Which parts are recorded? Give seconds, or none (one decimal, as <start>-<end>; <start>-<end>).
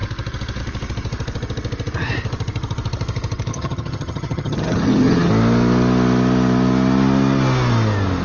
0.0-3.5; 5.3-8.2